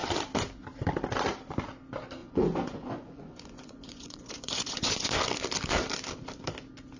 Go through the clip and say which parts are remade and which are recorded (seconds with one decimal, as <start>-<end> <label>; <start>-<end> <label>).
0.0-2.2 recorded; 2.2-5.1 remade; 5.1-7.0 recorded